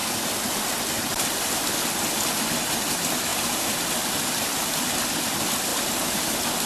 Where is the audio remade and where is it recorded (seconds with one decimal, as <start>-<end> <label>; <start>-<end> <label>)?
0.0-1.7 remade; 1.7-3.3 recorded; 3.3-4.9 remade; 4.9-5.7 recorded; 5.7-6.2 remade; 6.2-6.7 recorded

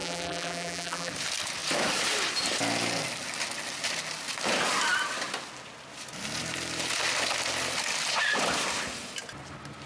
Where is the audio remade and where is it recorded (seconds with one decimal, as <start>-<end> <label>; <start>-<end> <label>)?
0.0-1.1 remade; 1.1-9.9 recorded

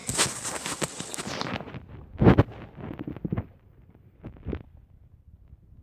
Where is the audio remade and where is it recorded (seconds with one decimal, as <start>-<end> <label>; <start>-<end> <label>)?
0.0-5.8 recorded

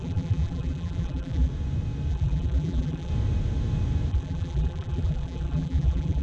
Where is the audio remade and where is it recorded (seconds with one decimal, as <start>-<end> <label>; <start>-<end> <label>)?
0.0-1.5 remade; 1.5-2.1 recorded; 2.1-3.1 remade; 3.1-4.1 recorded; 4.1-6.2 remade